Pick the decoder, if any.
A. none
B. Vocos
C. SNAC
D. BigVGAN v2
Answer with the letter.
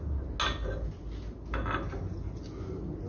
A